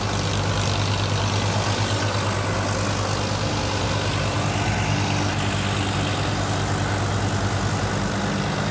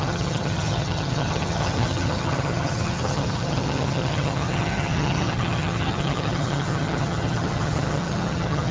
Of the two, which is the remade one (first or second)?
second